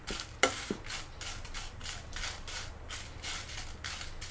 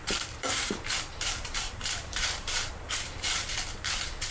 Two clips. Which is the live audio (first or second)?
first